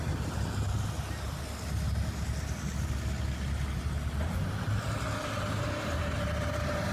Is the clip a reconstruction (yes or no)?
no